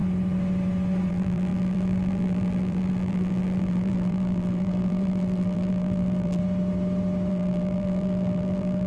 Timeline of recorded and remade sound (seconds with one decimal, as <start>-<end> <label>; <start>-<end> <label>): 0.0-1.1 recorded; 1.1-6.4 remade; 6.4-7.3 recorded; 7.3-8.9 remade